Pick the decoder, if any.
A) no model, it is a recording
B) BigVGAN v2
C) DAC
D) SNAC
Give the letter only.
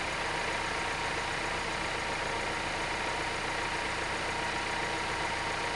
A